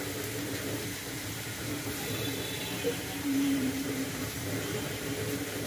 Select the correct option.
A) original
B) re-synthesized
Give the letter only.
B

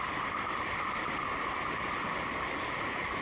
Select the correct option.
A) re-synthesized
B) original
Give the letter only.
B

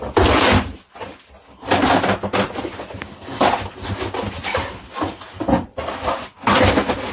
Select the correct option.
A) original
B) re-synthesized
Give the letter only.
A